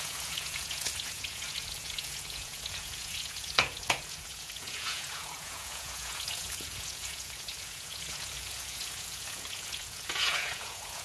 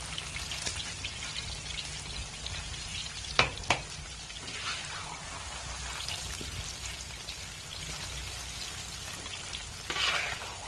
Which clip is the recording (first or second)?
second